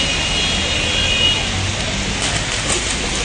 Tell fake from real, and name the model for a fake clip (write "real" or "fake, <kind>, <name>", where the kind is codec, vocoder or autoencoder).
real